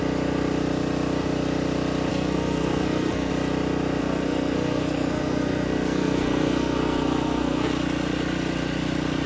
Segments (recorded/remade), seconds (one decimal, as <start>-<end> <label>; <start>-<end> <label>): 0.0-2.1 recorded; 2.1-3.3 remade; 3.3-4.0 recorded; 4.0-7.7 remade; 7.7-9.3 recorded